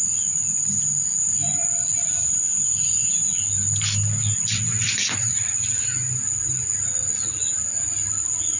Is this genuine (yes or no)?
yes